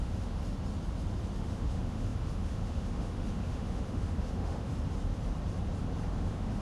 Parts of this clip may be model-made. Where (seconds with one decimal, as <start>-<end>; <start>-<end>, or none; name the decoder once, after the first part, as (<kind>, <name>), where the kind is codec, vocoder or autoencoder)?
0.0-0.4 (autoencoder, DAC-VAE); 1.4-4.7; 6.1-6.6